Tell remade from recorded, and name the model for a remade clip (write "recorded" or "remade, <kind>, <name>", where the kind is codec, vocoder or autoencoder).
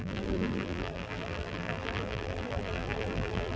remade, vocoder, BigVGAN v2